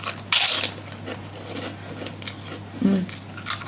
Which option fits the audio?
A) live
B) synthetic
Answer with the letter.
A